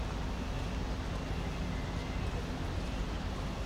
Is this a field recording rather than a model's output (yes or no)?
yes